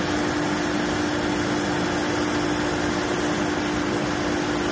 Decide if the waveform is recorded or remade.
recorded